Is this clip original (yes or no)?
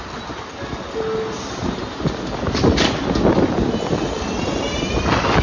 yes